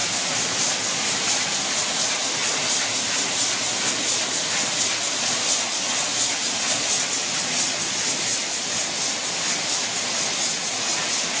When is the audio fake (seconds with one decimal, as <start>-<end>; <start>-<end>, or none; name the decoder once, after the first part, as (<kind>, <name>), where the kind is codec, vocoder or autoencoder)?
none